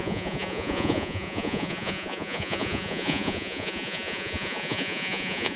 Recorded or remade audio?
remade